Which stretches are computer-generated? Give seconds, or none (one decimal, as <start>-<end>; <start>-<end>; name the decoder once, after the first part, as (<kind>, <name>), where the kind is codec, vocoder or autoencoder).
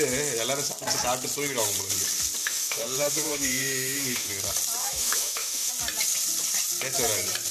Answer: 2.4-4.3 (autoencoder, DAC-VAE); 4.8-5.7